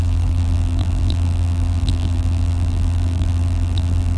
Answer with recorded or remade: remade